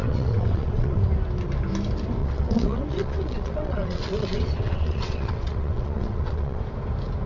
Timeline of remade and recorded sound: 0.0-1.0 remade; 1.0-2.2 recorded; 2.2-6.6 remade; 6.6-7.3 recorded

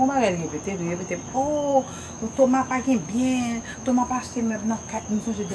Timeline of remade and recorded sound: 0.0-1.7 recorded; 1.7-5.0 remade; 5.0-5.5 recorded

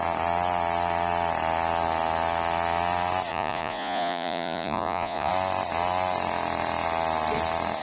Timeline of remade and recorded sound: 0.0-3.3 recorded; 3.3-5.3 remade; 5.3-7.8 recorded

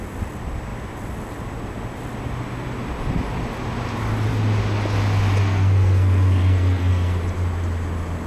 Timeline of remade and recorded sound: 0.0-5.4 recorded; 5.4-7.2 remade; 7.2-8.3 recorded